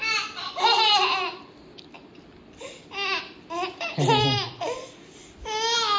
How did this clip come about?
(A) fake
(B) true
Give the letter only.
B